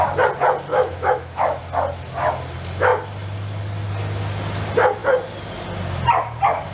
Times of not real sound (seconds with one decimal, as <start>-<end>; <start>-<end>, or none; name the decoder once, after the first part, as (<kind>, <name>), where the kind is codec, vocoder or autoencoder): 0.7-1.6 (autoencoder, DAC-VAE)